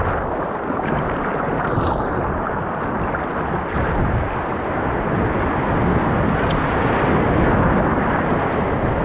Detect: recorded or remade recorded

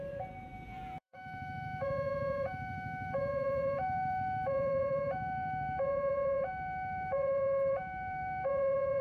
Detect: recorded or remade remade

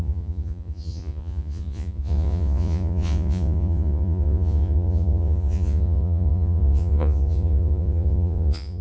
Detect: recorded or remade remade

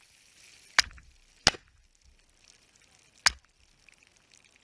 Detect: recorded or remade recorded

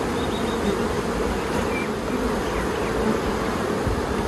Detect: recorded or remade recorded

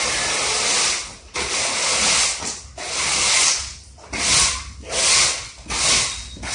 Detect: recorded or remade recorded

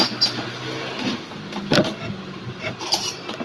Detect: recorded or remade recorded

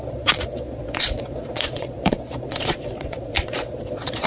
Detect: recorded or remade remade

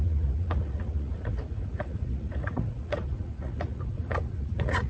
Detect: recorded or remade remade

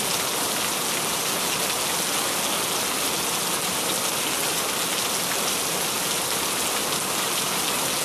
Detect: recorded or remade recorded